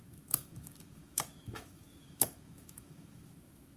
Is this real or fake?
fake